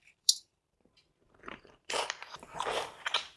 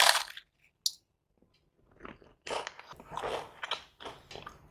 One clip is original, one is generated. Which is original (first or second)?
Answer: second